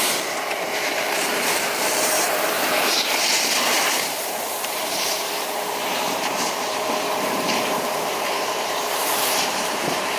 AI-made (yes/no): yes